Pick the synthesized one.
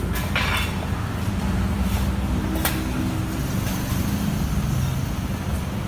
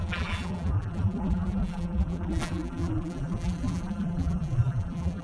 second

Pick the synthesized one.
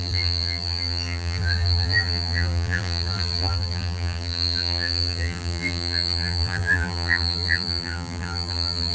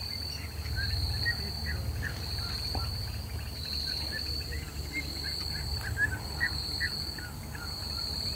first